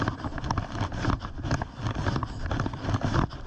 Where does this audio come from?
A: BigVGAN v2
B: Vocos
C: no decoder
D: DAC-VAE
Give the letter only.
C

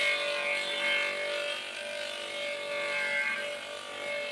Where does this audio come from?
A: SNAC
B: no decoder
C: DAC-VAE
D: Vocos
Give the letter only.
B